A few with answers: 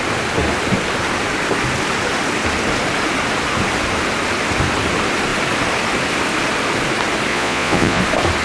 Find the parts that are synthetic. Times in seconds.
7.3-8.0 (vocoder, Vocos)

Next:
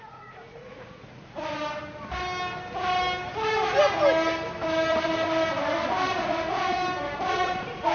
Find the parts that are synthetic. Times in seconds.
0.0-1.5 (vocoder, Vocos); 6.2-6.8; 7.3-7.9

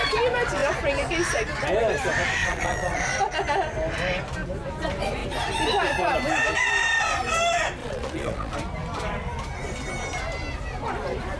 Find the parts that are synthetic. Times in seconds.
2.4-3.0 (vocoder, Vocos); 7.8-8.5

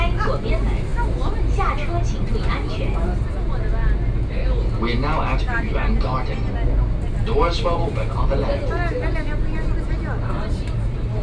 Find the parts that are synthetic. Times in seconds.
none